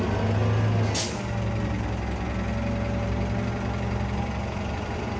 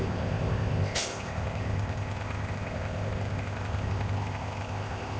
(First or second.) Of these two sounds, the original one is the first